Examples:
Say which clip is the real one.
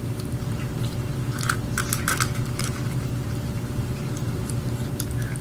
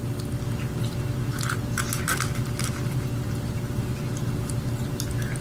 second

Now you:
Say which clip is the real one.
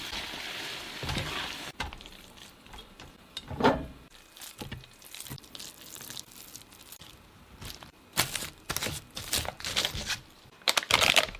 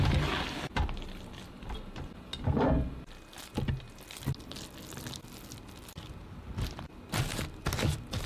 second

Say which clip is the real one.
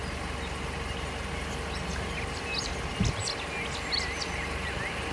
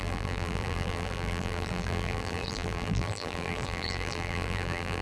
first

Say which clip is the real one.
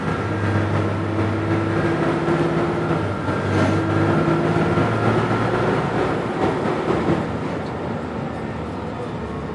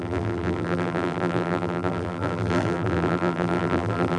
first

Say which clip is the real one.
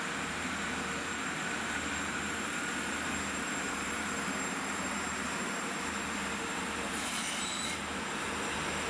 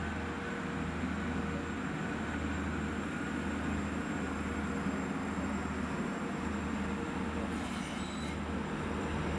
second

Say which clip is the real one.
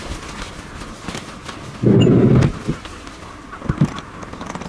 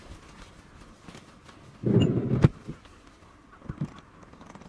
first